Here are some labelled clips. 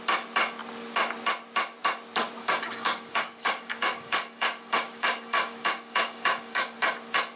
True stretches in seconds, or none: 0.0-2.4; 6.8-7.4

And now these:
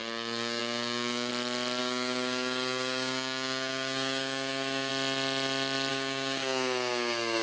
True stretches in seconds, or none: 1.3-1.8; 4.9-5.9

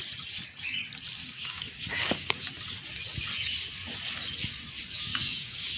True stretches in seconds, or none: 0.0-1.2; 2.5-5.1